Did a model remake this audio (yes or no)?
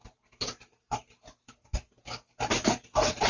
no